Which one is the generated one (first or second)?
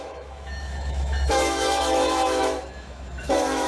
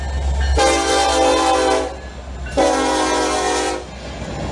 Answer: first